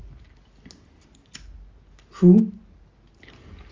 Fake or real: real